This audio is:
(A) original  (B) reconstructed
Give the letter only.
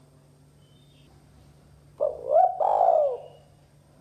A